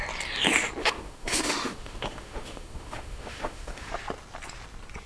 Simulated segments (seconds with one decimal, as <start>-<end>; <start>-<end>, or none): 0.8-3.9